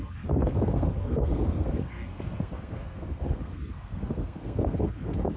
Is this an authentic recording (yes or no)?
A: no